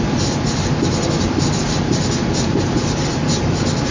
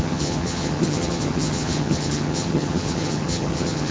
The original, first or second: first